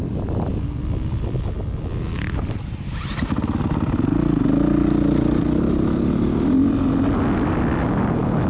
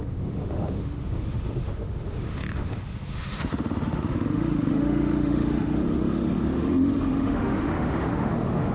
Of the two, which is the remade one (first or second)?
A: second